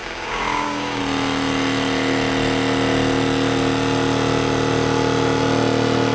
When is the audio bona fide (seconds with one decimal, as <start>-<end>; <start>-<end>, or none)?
1.0-6.1